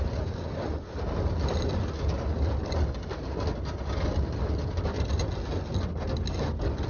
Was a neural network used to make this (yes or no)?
no